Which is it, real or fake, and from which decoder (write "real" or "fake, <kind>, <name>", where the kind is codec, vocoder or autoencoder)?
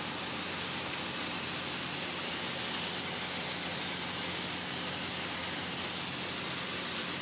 real